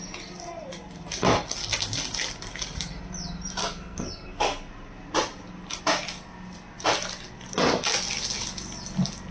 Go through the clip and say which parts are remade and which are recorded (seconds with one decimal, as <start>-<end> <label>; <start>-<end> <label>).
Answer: 0.0-3.6 recorded; 3.6-4.7 remade; 4.7-9.3 recorded